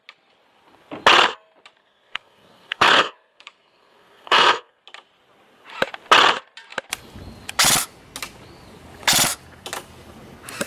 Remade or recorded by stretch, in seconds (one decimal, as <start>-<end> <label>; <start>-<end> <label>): 0.0-1.8 recorded; 1.8-4.8 remade; 4.8-10.7 recorded

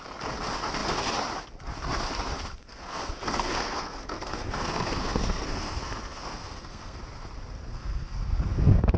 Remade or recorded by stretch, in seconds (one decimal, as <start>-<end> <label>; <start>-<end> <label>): 0.0-2.6 recorded; 2.6-7.0 remade; 7.0-7.7 recorded; 7.7-9.0 remade

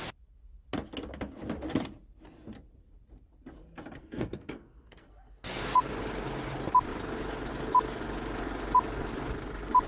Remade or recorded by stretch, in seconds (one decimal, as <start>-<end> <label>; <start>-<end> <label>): 0.0-4.0 recorded; 4.0-5.9 remade; 5.9-9.9 recorded

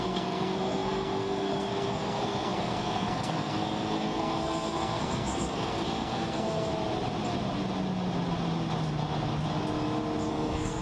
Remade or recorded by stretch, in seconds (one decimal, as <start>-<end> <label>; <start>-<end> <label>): 0.0-6.7 remade; 6.7-10.3 recorded; 10.3-10.8 remade

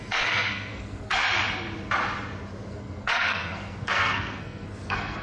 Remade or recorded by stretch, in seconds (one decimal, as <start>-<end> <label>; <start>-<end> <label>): 0.0-1.1 remade; 1.1-2.7 recorded; 2.7-5.2 remade